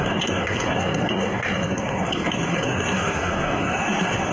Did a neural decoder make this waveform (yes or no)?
yes